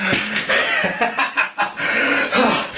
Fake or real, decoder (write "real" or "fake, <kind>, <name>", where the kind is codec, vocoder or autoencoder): real